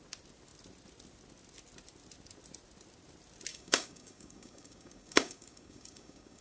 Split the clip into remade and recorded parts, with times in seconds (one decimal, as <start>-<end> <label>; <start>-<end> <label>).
0.0-3.5 recorded; 3.5-6.4 remade